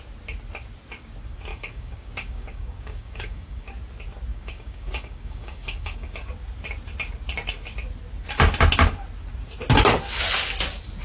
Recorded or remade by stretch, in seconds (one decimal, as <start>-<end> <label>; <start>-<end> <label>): 0.0-1.5 recorded; 1.5-3.7 remade; 3.7-4.3 recorded; 4.3-6.3 remade; 6.3-11.0 recorded